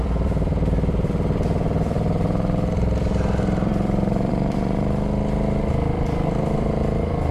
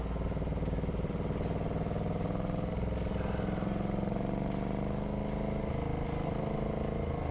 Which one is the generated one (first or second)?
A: first